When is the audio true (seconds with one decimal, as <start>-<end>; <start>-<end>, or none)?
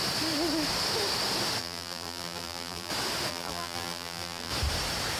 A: 0.0-1.6; 2.9-3.3; 4.5-5.2